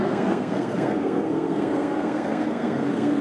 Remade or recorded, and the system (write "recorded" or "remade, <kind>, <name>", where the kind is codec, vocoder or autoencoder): remade, codec, SNAC